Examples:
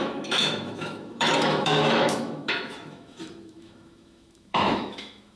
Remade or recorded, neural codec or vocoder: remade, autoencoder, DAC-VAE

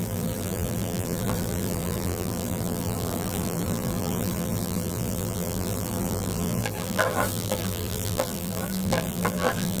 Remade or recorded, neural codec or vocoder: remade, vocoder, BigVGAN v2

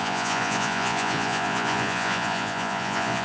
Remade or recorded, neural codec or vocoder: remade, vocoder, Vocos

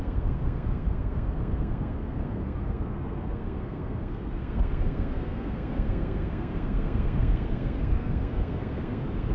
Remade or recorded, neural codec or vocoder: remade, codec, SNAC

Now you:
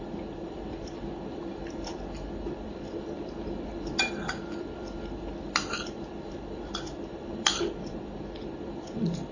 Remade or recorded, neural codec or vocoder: remade, vocoder, BigVGAN v2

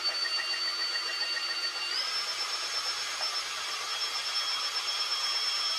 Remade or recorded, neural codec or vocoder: recorded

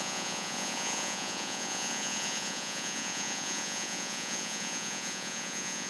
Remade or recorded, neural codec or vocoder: remade, vocoder, Vocos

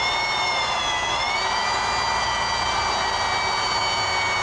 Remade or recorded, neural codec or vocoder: recorded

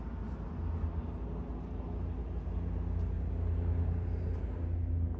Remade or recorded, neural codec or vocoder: recorded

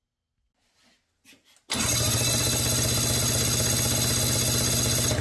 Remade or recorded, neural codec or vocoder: recorded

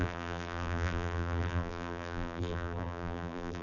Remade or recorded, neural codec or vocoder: remade, vocoder, BigVGAN v2